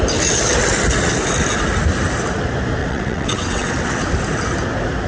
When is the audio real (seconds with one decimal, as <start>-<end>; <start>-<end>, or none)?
0.0-2.8; 3.7-5.1